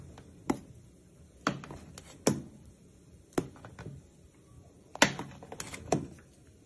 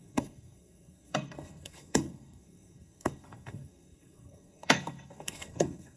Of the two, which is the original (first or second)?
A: first